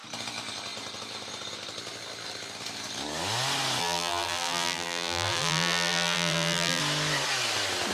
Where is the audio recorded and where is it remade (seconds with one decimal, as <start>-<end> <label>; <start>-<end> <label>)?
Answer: 0.0-3.8 recorded; 3.8-6.8 remade; 6.8-7.9 recorded